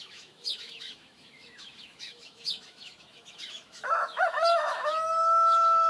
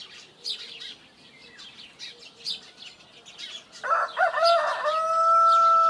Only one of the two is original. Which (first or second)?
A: second